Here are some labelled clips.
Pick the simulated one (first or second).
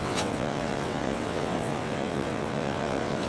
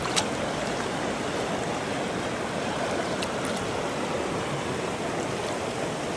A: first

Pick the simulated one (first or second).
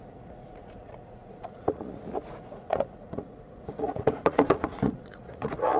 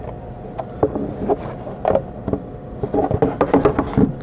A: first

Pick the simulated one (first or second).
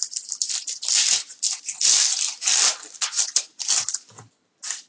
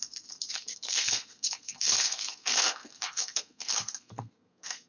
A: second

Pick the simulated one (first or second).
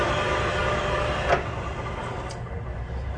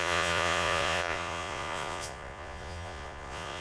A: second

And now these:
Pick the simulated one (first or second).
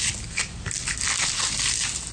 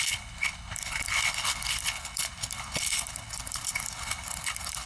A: second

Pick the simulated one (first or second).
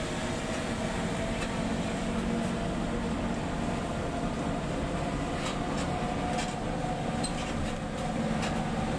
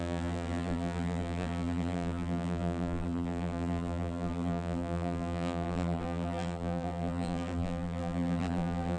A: second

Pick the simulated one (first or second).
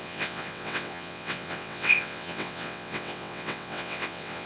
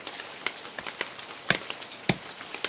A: first